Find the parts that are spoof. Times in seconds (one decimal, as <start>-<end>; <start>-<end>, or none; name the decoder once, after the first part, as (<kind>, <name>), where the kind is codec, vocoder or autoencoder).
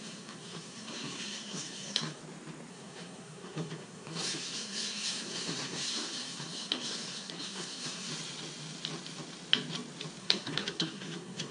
0.0-2.2 (codec, SNAC); 2.7-8.1; 10.2-11.5